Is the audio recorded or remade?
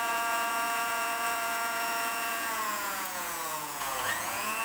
remade